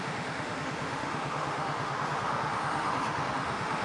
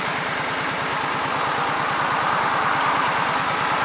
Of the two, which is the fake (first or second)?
first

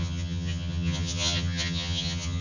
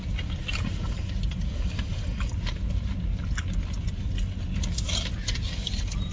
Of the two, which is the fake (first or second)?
first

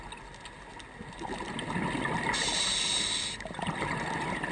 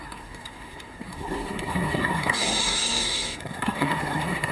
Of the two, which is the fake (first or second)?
second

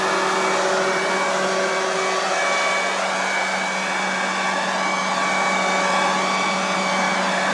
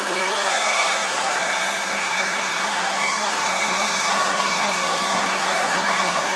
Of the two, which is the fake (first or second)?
second